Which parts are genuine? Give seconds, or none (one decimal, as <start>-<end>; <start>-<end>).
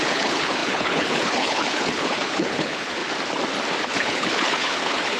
3.0-3.8